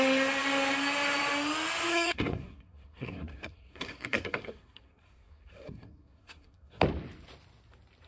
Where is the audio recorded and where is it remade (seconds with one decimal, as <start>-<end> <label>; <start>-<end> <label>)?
0.0-1.9 recorded; 1.9-6.8 remade; 6.8-8.1 recorded